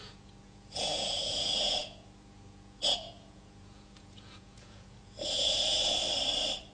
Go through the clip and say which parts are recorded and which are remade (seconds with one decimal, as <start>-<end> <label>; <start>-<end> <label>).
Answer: 0.0-6.0 remade; 6.0-6.7 recorded